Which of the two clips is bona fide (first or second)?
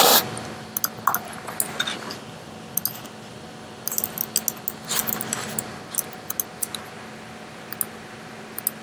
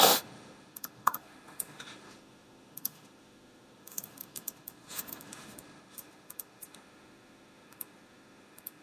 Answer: first